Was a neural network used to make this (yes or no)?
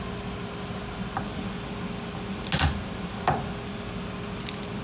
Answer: no